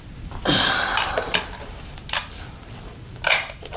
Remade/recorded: recorded